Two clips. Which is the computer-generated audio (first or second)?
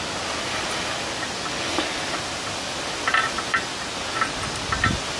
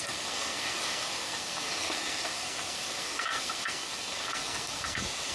second